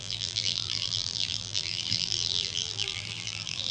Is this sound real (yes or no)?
no